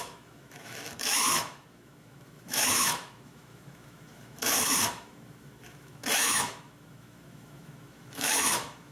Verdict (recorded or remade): remade